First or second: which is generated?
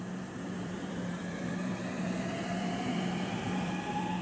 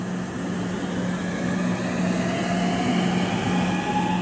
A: first